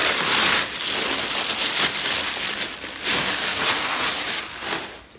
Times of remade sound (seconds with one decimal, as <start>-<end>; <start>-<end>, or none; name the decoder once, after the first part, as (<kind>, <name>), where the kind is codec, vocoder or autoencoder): 3.5-4.4 (vocoder, Vocos)